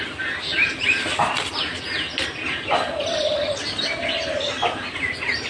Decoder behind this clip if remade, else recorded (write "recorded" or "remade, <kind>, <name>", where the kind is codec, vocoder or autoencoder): recorded